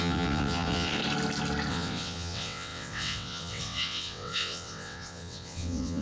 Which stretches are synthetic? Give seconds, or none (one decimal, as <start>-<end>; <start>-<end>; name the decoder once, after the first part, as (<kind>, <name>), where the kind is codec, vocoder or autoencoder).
0.0-1.0 (vocoder, WaveNeXt); 1.7-6.0